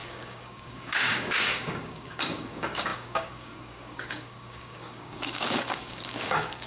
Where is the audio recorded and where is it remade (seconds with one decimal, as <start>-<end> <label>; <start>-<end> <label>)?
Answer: 0.0-6.7 remade